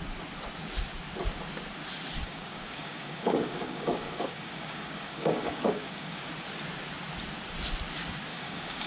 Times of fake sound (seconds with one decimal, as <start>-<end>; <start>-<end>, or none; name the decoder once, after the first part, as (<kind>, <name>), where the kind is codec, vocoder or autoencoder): 2.2-6.3 (codec, DAC); 8.3-8.9

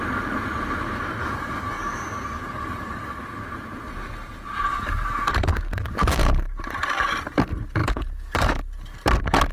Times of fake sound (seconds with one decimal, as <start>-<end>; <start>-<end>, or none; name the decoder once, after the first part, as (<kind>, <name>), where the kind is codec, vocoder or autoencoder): 1.2-3.2 (codec, DAC); 4.7-6.2; 7.8-8.6

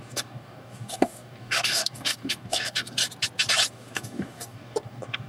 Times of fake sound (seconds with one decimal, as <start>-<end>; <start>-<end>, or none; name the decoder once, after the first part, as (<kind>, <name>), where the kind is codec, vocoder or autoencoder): 0.0-3.0 (codec, DAC); 3.7-5.3

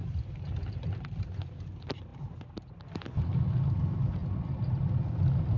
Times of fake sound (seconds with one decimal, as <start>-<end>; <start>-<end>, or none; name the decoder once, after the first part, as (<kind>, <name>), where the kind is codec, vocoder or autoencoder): none

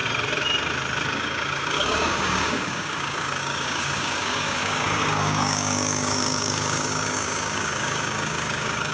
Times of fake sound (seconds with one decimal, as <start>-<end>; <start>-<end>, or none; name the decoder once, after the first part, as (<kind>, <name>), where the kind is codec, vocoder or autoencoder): 1.1-8.9 (codec, DAC)

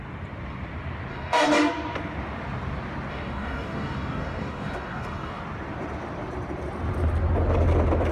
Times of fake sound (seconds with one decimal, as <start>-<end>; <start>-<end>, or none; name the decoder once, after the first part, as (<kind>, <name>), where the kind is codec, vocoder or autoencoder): 1.1-1.6 (codec, DAC); 3.1-5.4

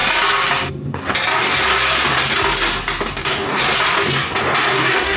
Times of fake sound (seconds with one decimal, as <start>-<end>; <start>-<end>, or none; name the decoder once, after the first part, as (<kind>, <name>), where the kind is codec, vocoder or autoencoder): 3.1-3.6 (codec, DAC); 4.7-5.2